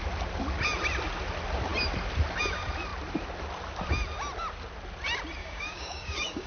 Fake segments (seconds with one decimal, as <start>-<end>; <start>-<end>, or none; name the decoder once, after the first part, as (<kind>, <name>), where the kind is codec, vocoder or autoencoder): 5.4-6.5 (codec, DAC)